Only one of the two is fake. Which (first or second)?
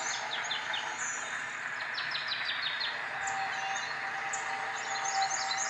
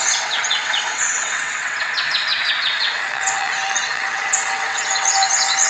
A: second